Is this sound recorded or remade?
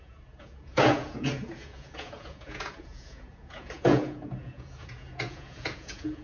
remade